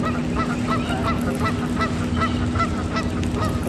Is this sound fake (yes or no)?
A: no